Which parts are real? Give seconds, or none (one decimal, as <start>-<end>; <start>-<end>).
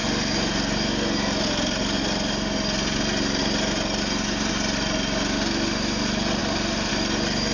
0.0-7.5